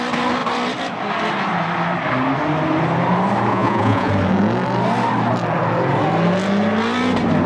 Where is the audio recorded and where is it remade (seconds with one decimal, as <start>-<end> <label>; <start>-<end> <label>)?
0.0-3.5 recorded; 3.5-4.1 remade; 4.1-7.5 recorded